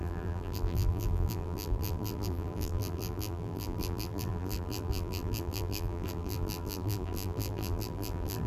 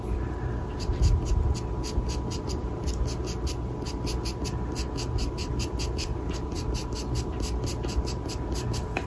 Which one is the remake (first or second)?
first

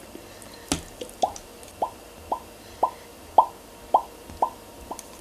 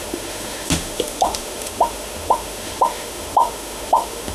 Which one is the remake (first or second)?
second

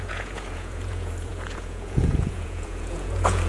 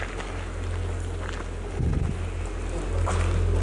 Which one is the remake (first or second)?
first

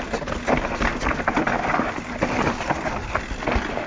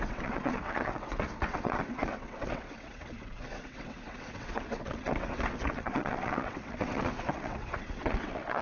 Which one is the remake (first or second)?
second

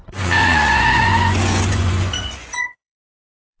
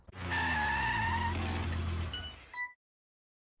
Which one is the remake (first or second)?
first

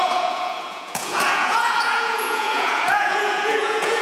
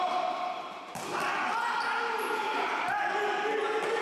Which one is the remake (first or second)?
first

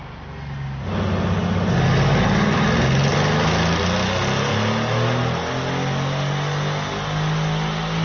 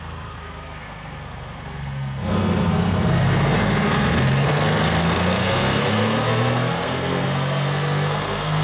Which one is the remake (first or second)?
second